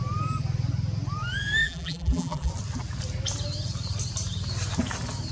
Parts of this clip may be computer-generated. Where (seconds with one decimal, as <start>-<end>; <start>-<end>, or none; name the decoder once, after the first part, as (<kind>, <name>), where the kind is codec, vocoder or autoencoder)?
1.6-2.5 (vocoder, BigVGAN v2)